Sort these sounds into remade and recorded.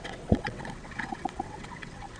remade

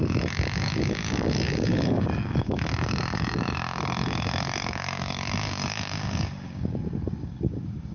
remade